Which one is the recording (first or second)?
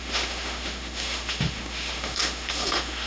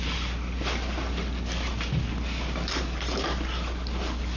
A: second